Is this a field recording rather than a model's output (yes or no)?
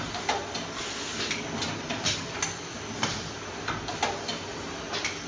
yes